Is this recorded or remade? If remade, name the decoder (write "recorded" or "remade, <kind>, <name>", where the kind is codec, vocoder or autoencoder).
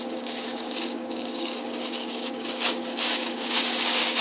remade, codec, DAC